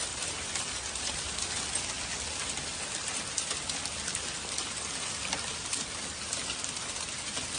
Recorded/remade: recorded